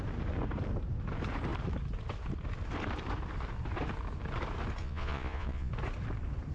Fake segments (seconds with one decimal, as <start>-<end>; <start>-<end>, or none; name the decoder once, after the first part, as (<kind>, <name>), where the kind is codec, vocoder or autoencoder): 4.8-5.7 (vocoder, Vocos)